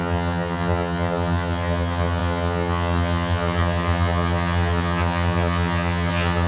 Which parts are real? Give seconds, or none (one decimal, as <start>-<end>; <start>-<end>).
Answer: none